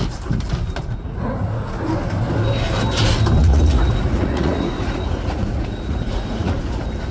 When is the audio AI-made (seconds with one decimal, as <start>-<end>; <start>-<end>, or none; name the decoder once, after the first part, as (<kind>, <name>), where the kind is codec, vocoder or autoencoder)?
0.8-1.9 (vocoder, Vocos); 3.4-6.6